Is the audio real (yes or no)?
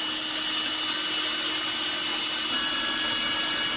yes